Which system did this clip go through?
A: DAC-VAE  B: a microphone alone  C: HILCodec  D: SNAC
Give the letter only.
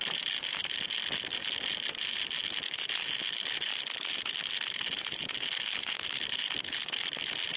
B